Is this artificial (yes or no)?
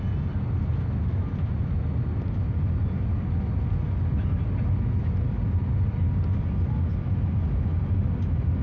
no